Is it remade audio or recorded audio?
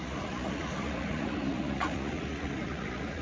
remade